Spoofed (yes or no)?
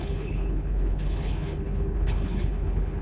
yes